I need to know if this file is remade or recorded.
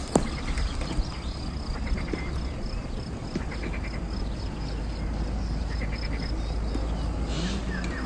recorded